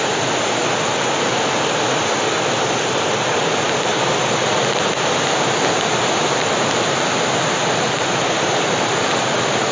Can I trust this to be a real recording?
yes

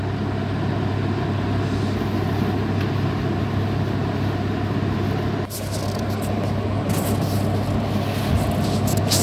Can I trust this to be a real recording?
yes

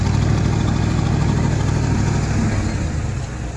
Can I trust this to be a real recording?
yes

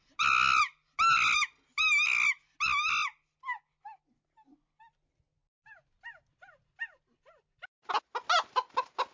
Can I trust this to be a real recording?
yes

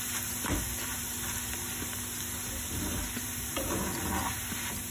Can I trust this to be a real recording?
yes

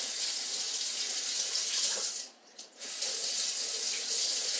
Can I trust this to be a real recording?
no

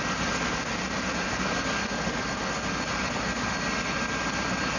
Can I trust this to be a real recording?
yes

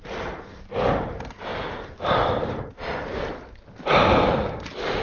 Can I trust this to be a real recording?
yes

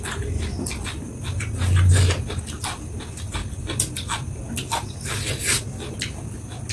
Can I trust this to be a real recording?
yes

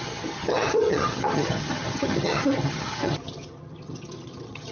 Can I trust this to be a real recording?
no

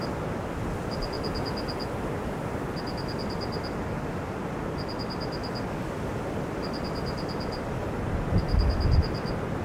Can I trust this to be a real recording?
yes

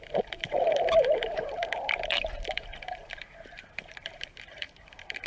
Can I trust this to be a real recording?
no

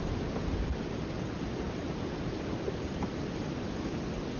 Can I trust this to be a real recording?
yes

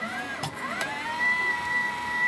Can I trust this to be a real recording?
yes